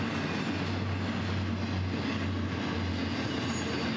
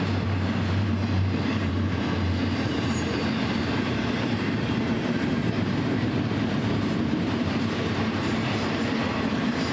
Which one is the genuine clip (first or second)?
first